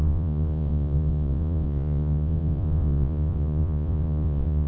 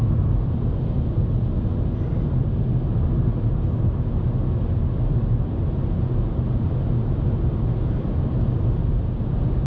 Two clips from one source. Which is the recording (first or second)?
second